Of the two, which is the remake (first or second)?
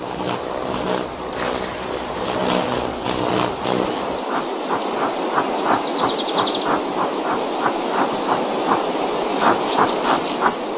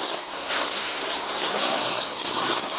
second